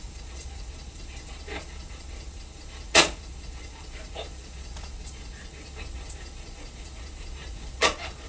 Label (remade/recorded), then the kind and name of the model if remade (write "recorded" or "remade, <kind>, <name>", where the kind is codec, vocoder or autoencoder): remade, vocoder, Vocos